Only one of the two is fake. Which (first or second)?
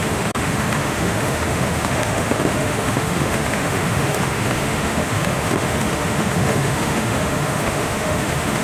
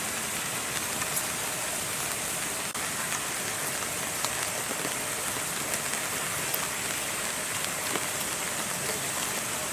first